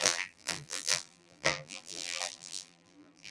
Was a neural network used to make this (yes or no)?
yes